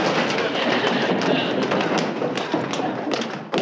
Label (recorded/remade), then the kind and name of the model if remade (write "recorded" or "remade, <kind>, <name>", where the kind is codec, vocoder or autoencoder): recorded